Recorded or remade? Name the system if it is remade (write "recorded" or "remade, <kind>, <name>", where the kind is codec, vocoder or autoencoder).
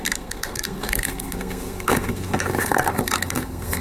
remade, codec, SNAC